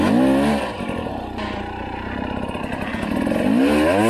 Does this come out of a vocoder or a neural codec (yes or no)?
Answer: no